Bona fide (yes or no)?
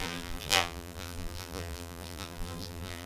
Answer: no